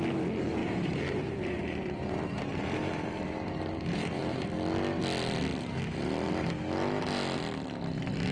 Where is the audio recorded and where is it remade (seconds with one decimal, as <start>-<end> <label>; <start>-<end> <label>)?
0.0-0.6 recorded; 0.6-4.5 remade; 4.5-8.3 recorded